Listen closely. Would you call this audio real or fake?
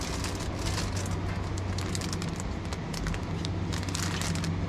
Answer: real